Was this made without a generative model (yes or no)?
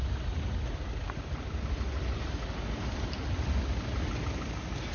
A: yes